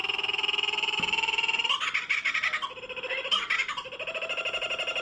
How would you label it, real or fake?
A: real